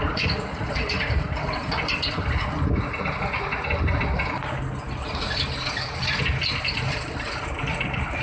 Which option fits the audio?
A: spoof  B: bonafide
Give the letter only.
B